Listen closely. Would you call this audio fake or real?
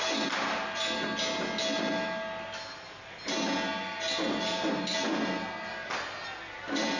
real